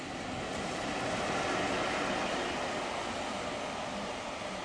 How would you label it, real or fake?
real